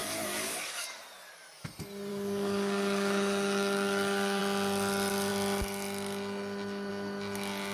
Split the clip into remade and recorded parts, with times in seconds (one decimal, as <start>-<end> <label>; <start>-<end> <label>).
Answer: 0.0-1.0 remade; 1.0-2.1 recorded; 2.1-4.4 remade; 4.4-7.7 recorded